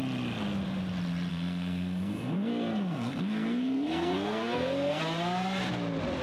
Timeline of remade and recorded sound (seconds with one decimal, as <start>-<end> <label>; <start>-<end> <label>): 0.0-1.3 recorded; 1.3-5.0 remade; 5.0-6.2 recorded